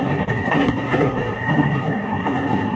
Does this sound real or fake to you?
fake